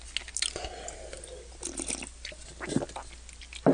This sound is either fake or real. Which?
real